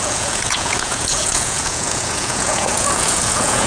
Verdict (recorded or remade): remade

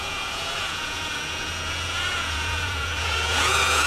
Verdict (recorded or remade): remade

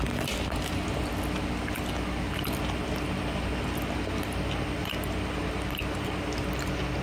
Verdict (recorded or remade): recorded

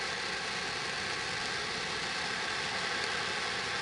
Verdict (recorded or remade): recorded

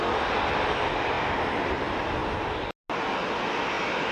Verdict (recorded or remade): recorded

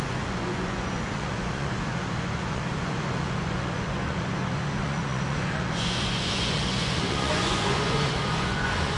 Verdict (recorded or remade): remade